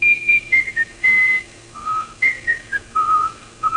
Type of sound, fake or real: fake